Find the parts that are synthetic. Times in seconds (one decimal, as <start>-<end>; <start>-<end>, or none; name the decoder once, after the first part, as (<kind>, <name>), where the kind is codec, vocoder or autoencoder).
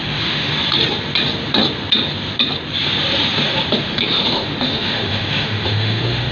0.0-0.5 (autoencoder, DAC-VAE); 3.8-6.3